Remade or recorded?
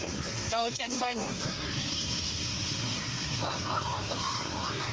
remade